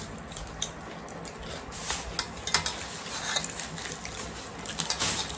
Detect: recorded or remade recorded